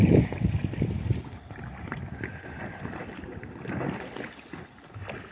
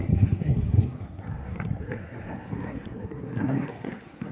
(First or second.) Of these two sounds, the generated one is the second